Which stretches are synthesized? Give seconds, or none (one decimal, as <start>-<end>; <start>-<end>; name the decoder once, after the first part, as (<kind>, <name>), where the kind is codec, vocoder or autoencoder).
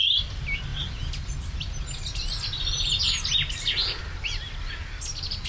none